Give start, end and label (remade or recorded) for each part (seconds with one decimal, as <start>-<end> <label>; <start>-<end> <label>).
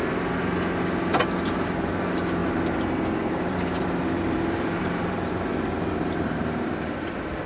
0.0-2.4 recorded; 2.4-6.8 remade; 6.8-7.5 recorded